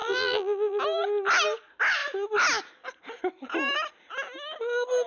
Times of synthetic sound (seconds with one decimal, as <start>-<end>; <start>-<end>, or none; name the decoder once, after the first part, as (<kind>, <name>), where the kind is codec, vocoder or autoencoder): 0.0-0.8 (vocoder, BigVGAN v2)